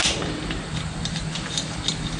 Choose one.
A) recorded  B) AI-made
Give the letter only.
A